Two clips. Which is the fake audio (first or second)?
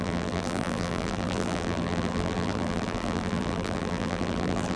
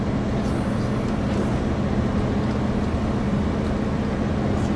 first